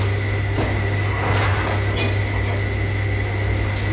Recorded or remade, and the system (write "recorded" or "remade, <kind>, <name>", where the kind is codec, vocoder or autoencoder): recorded